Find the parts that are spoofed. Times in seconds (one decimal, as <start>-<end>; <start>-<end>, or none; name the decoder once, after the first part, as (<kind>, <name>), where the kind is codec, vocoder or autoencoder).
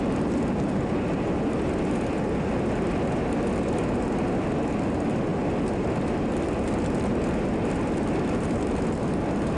none